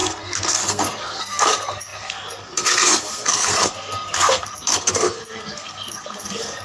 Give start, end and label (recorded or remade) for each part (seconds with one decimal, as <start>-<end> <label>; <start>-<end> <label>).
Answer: 0.0-6.6 remade